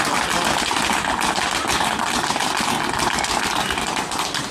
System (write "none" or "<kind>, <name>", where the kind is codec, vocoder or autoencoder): none